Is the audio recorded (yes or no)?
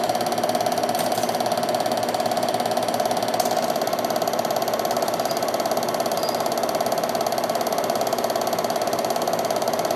yes